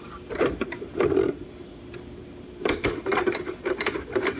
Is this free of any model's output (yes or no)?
no